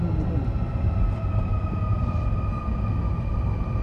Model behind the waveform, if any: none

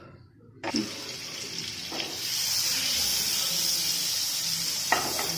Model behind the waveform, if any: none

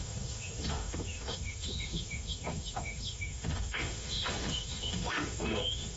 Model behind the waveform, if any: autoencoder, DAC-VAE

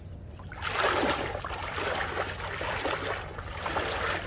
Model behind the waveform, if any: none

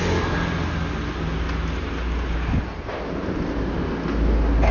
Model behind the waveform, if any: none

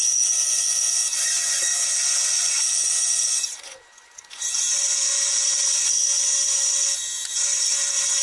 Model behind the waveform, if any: vocoder, Vocos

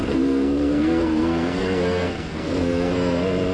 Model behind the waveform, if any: codec, SNAC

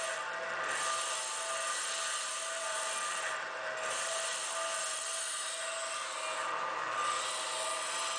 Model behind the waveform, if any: none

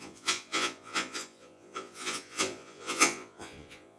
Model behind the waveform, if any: vocoder, Vocos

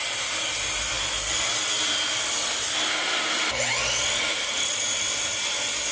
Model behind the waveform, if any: none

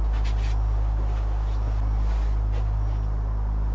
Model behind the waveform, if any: none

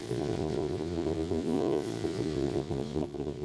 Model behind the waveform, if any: vocoder, Vocos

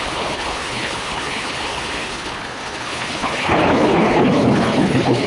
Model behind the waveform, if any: codec, HILCodec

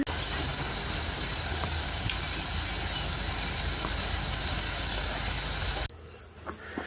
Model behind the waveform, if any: none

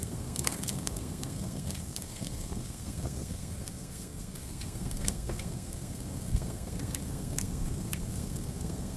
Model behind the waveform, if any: codec, SNAC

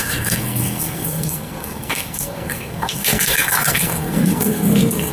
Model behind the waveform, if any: codec, SNAC